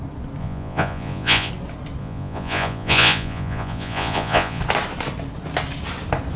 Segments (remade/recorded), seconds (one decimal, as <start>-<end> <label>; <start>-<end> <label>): 0.0-0.4 recorded; 0.4-1.5 remade; 1.5-2.0 recorded; 2.0-4.6 remade; 4.6-6.4 recorded